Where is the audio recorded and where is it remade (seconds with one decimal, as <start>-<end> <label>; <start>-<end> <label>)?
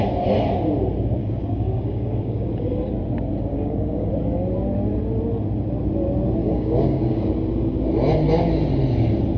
0.0-1.2 recorded; 1.2-2.5 remade; 2.5-3.5 recorded; 3.5-4.1 remade; 4.1-6.4 recorded; 6.4-7.3 remade; 7.3-9.4 recorded